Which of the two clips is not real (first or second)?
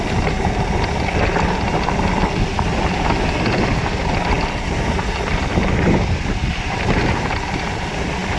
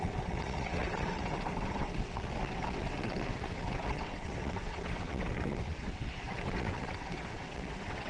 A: second